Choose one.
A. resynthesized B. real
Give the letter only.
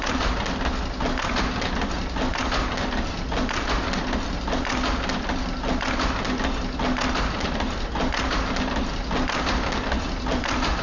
B